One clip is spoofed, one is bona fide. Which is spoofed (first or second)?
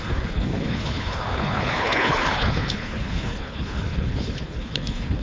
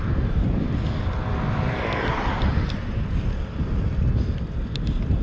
first